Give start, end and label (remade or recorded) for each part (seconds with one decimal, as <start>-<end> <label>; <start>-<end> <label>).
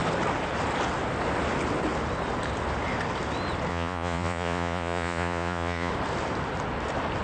0.0-3.7 recorded; 3.7-5.9 remade; 5.9-7.2 recorded